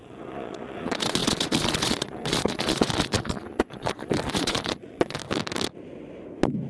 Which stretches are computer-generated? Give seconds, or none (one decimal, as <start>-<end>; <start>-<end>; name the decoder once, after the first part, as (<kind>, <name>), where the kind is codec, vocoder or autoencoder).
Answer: 0.0-5.2 (vocoder, Vocos)